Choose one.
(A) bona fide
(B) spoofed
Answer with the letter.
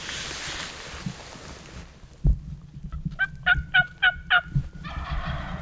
A